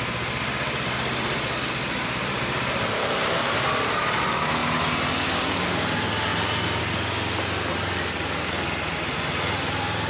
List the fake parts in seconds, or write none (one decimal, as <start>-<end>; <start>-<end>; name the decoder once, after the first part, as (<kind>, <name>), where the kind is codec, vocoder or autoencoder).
none